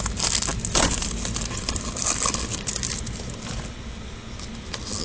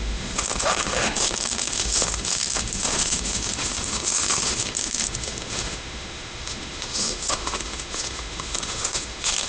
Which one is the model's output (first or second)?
second